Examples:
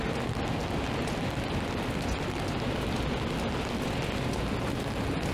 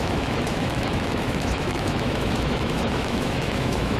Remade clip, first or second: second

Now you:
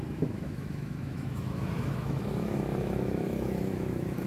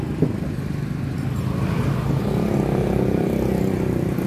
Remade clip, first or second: first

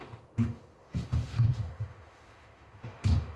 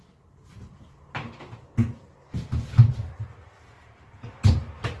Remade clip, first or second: first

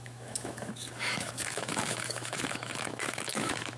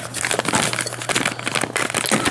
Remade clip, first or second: first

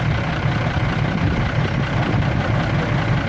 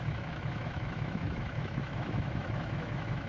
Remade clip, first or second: second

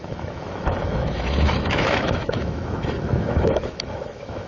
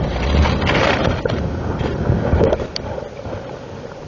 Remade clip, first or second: first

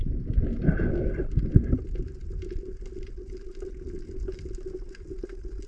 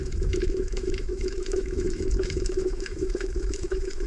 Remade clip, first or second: second